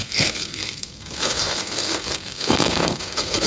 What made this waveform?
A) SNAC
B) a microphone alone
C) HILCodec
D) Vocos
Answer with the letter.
A